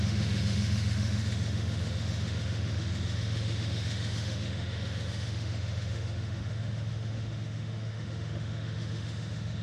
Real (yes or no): no